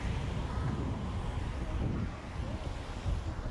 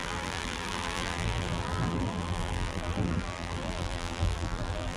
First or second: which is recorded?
first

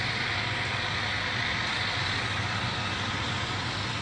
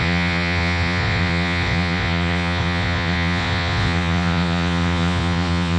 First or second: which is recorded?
first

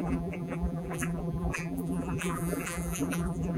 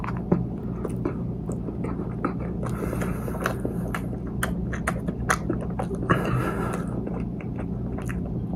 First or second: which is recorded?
second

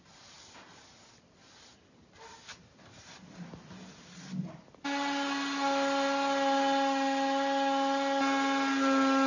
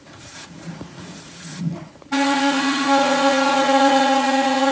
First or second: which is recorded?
first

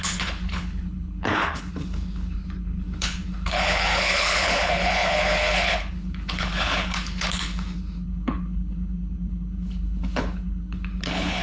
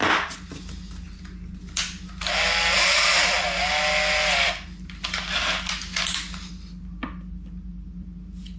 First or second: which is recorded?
second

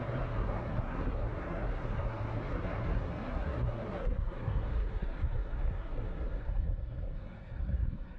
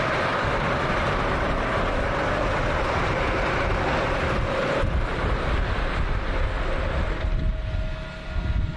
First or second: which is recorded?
second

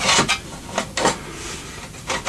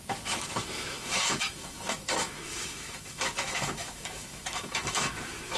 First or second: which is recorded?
first